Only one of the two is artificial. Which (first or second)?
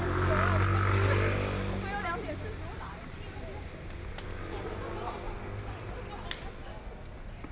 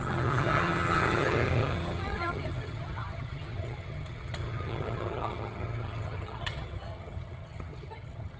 second